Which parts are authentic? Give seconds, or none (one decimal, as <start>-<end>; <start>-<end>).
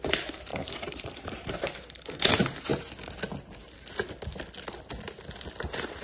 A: 2.7-5.6